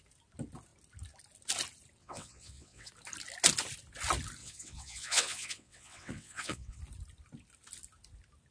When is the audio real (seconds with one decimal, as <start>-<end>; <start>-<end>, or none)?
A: 0.0-2.0; 2.9-4.4; 6.8-8.5